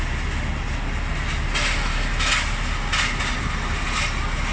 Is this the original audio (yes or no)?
yes